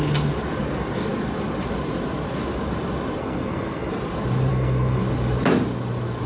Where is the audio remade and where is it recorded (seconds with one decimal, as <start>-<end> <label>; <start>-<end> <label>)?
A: 0.0-3.2 recorded; 3.2-3.9 remade; 3.9-4.5 recorded; 4.5-5.0 remade; 5.0-6.3 recorded